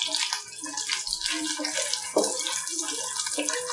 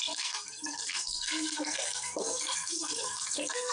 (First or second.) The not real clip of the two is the second